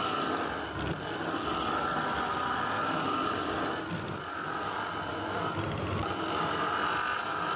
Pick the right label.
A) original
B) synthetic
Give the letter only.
A